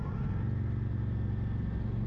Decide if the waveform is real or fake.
real